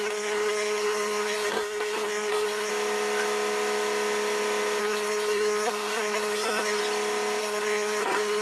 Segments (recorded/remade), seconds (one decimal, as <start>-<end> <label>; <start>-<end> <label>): 0.0-2.7 remade; 2.7-4.8 recorded; 4.8-6.8 remade; 6.8-7.4 recorded; 7.4-8.4 remade